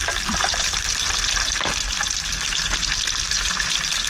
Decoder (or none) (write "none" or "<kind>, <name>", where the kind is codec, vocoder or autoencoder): none